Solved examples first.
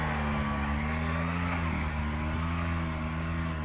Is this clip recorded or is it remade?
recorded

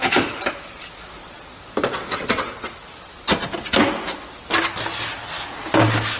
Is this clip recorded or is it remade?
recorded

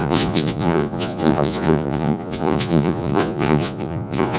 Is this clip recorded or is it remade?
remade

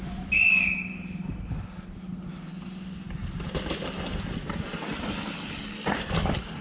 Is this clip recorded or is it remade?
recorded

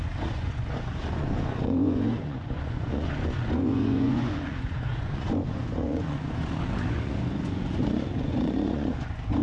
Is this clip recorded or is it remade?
remade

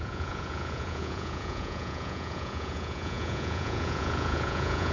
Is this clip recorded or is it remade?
remade